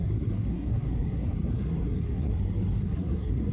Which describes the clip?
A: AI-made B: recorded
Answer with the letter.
A